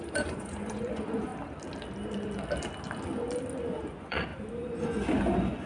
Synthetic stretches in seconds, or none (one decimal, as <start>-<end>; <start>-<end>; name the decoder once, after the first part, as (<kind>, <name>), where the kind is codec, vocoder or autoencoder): 0.0-1.3 (vocoder, Vocos); 3.6-4.3; 5.2-5.7